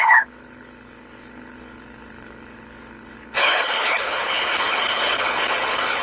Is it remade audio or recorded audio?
remade